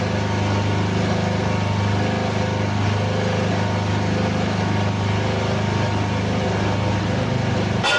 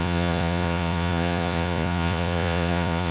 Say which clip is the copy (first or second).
second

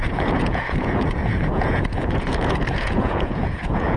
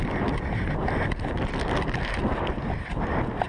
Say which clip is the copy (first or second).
first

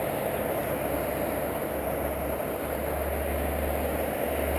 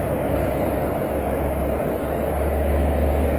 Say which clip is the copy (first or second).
second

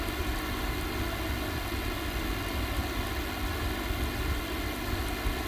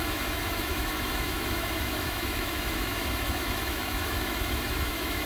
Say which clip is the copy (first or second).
second